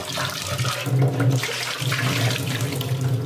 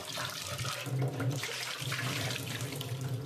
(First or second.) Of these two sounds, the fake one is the second